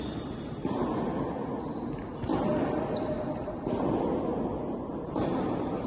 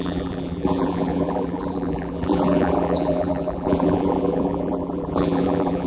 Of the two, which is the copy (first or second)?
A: second